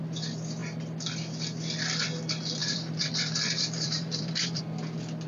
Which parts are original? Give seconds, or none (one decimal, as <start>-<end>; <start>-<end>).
0.0-2.6; 4.6-5.3

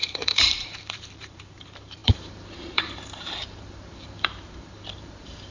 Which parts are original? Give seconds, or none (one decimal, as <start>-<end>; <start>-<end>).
none